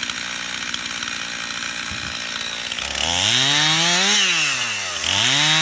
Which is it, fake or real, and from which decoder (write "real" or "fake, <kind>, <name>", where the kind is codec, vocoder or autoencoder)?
real